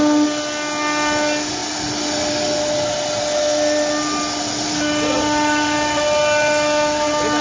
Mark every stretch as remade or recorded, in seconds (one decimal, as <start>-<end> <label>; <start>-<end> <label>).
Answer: 0.0-7.4 recorded